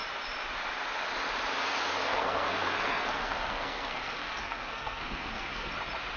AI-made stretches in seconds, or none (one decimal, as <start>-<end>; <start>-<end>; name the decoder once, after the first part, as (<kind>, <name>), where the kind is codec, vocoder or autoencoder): 2.0-5.7 (codec, SNAC)